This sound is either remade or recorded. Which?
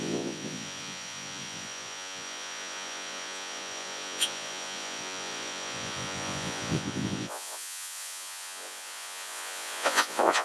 remade